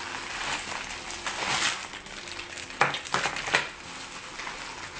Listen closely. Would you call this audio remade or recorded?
recorded